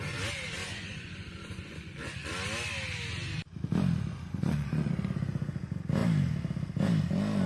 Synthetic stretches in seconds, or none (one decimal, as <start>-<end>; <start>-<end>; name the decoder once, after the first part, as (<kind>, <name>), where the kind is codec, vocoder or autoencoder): 0.6-2.3 (vocoder, Vocos); 4.1-4.9